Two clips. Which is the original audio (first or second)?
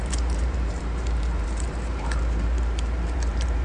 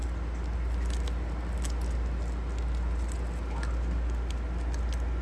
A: second